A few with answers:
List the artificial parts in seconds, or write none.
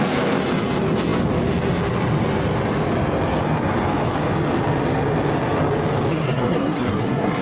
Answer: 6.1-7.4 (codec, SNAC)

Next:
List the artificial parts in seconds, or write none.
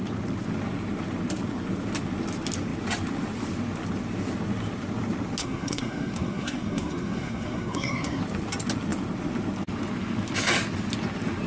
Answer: 5.4-8.2 (codec, SNAC)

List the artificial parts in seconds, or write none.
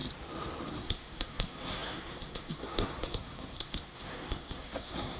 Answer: 0.7-5.2 (codec, SNAC)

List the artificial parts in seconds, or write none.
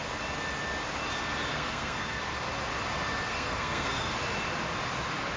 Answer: 1.5-2.2 (codec, SNAC); 3.3-4.1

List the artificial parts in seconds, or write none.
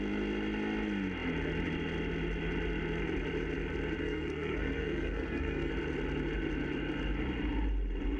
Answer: 4.0-5.7 (codec, SNAC)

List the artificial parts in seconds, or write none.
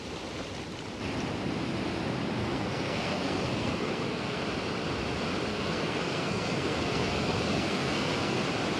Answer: 2.4-4.4 (codec, SNAC); 5.5-8.4